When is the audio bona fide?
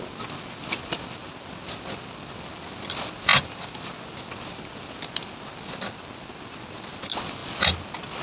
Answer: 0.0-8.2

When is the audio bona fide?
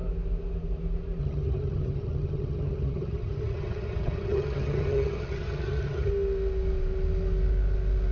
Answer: 0.0-1.2; 6.1-8.1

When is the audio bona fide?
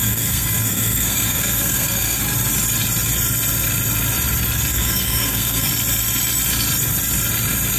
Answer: 2.2-4.7; 5.7-7.8